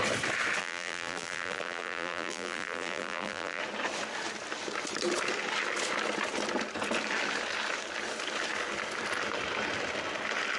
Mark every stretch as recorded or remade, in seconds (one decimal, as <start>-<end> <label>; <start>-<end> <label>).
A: 0.0-0.6 recorded; 0.6-3.6 remade; 3.6-10.6 recorded